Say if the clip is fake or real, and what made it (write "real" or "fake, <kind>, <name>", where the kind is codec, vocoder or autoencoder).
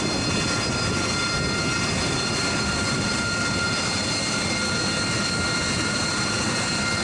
real